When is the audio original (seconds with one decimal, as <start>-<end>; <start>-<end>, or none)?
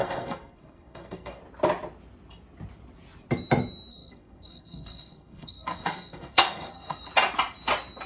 1.4-3.9; 7.1-8.1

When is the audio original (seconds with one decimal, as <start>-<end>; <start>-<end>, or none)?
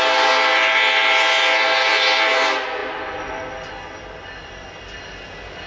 0.0-5.7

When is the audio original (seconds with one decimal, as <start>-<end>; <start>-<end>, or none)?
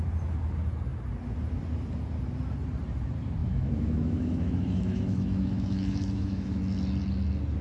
0.0-3.4; 6.6-7.6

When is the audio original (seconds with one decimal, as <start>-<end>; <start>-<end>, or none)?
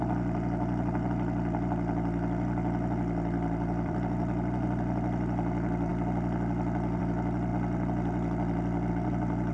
5.9-7.0; 7.5-8.9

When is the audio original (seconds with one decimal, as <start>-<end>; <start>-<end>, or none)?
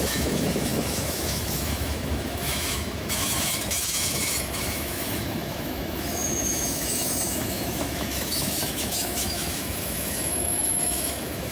none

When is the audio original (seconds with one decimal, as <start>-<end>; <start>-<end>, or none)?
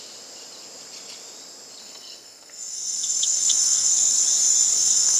0.0-1.8; 4.2-4.7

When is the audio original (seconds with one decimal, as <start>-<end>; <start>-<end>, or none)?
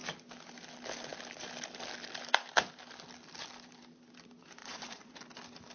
0.0-4.6; 5.2-5.7